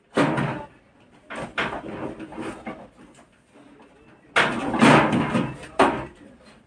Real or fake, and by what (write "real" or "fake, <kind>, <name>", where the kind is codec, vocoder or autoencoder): real